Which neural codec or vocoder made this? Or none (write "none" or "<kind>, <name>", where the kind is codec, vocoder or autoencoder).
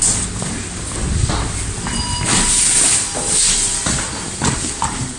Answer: none